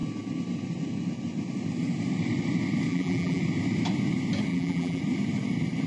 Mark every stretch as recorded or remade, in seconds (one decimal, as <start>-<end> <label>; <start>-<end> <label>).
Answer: 0.0-2.9 recorded; 2.9-3.4 remade; 3.4-4.5 recorded; 4.5-5.0 remade; 5.0-5.9 recorded